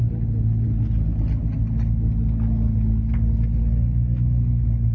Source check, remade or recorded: recorded